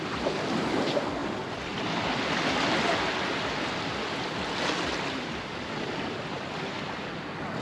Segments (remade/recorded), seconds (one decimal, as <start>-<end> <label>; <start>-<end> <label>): 0.0-1.2 recorded; 1.2-1.8 remade; 1.8-7.6 recorded